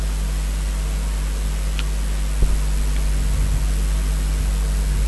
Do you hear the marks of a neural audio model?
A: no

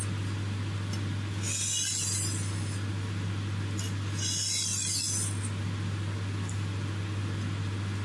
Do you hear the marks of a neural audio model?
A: no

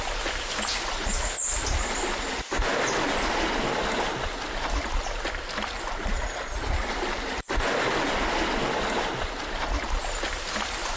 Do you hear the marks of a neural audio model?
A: no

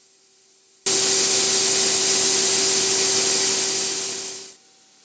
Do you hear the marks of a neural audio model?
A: no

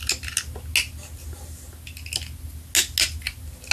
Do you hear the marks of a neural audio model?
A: no